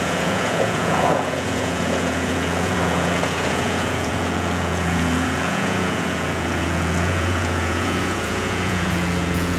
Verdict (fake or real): fake